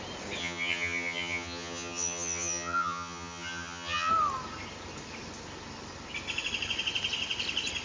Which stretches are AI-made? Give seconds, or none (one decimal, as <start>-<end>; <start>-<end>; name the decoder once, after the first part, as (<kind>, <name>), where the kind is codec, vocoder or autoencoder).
0.4-4.1 (vocoder, HiFi-GAN)